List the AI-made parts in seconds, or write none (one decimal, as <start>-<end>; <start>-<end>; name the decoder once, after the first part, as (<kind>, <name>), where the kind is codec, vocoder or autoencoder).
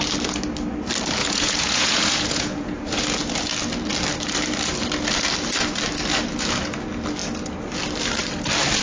1.2-3.0 (vocoder, Vocos)